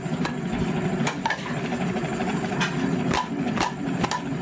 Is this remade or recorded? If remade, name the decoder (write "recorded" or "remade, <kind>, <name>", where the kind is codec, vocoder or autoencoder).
remade, vocoder, BigVGAN v2